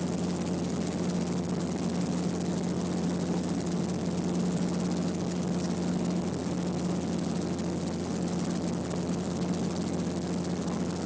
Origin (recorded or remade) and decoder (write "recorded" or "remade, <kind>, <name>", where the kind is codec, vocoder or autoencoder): recorded